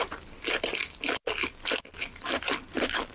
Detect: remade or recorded recorded